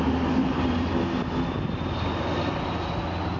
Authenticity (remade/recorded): recorded